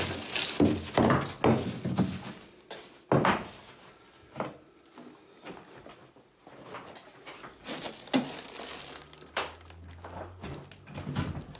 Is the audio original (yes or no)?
yes